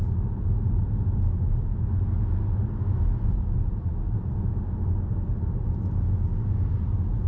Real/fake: real